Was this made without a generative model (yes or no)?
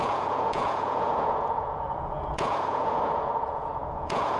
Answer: no